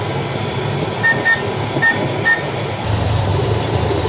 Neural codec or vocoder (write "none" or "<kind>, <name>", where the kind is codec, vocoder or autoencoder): none